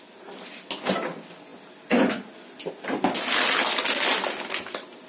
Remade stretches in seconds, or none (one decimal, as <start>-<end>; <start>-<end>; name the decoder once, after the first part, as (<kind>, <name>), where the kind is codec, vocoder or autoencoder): none